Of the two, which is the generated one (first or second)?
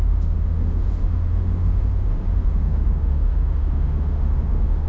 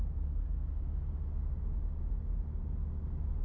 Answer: first